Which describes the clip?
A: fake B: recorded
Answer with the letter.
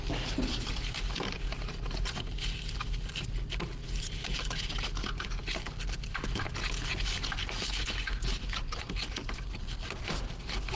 B